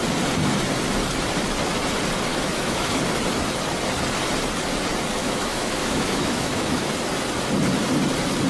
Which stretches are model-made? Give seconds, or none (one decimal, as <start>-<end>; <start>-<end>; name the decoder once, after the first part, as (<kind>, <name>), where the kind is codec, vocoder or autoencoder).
2.3-3.0 (autoencoder, DAC-VAE); 5.2-6.9